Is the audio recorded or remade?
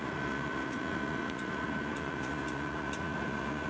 remade